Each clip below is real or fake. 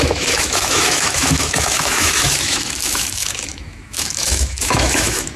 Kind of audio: fake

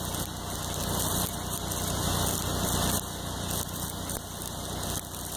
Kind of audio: real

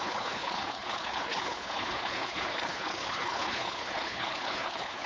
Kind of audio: fake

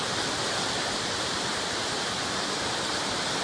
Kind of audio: real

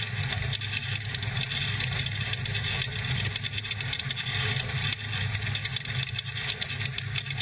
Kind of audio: real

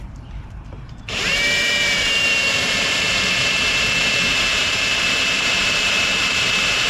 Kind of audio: fake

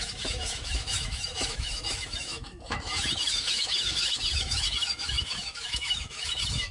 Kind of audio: fake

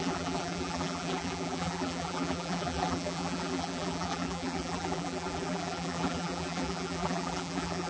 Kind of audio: fake